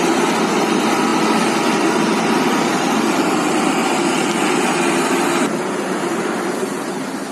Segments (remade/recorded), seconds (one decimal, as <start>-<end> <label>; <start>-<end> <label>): 0.0-7.3 recorded